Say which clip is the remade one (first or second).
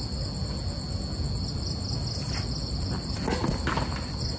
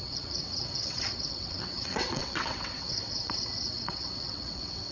second